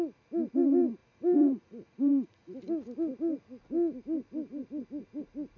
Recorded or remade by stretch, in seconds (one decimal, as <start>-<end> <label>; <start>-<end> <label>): 0.0-1.0 recorded; 1.0-2.6 remade; 2.6-5.6 recorded